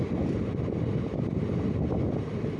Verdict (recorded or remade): recorded